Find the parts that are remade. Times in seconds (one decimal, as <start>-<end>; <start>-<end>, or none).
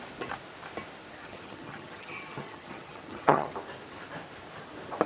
1.2-3.5